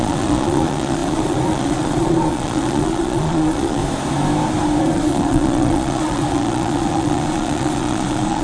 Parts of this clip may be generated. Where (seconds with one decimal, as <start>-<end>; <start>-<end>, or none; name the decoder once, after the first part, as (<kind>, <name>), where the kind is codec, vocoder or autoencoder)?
0.0-3.8 (vocoder, Vocos); 4.8-8.4